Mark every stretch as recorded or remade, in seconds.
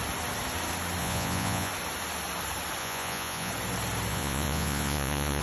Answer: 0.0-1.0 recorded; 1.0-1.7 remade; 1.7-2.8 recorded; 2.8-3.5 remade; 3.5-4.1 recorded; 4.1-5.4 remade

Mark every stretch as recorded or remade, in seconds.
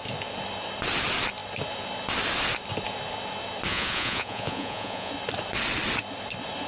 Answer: 0.0-3.7 recorded; 3.7-5.1 remade; 5.1-6.7 recorded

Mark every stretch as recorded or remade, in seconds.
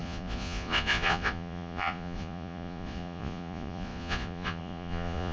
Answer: 0.0-5.3 remade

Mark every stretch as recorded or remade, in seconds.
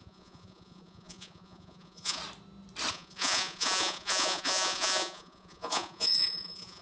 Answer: 0.0-2.2 remade; 2.2-2.9 recorded; 2.9-6.8 remade